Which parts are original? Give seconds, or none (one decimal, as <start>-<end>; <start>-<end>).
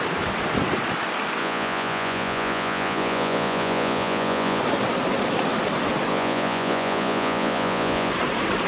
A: 0.0-1.4; 4.6-6.1; 8.1-8.7